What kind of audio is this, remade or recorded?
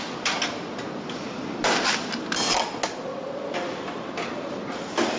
recorded